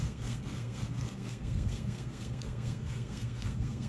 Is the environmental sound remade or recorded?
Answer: remade